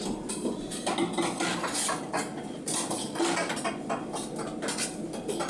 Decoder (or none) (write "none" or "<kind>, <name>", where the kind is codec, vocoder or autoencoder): none